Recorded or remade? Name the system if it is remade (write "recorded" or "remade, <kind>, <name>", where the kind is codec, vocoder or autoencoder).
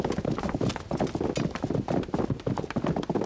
recorded